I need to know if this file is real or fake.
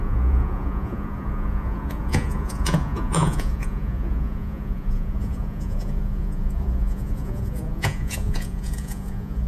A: fake